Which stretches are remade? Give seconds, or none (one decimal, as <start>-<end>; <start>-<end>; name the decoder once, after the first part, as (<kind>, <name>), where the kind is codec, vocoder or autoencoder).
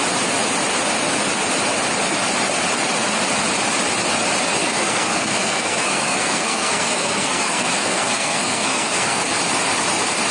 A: 4.6-9.3 (codec, SNAC)